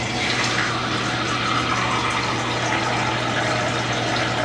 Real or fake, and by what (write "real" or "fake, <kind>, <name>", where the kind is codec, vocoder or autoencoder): real